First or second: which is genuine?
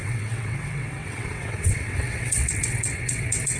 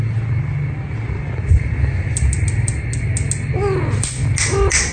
second